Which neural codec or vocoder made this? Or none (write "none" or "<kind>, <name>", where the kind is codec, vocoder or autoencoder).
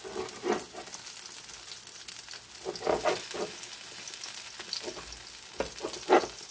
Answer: none